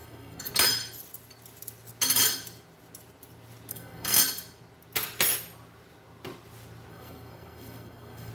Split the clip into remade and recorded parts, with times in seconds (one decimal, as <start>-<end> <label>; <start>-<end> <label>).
0.0-0.5 remade; 0.5-3.7 recorded; 3.7-4.2 remade; 4.2-6.9 recorded; 6.9-8.3 remade